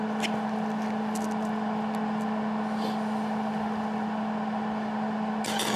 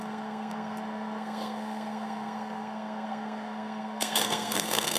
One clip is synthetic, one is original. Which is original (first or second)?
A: first